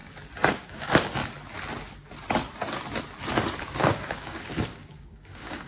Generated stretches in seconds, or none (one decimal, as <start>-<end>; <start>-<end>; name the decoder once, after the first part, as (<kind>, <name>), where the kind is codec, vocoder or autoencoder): 0.5-1.2 (codec, DAC); 3.8-5.7